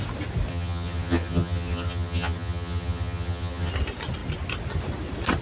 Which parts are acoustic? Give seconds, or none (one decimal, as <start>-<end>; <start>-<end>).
0.0-0.5; 3.7-5.4